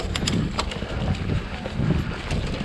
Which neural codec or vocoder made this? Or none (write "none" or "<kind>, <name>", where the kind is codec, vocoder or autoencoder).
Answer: none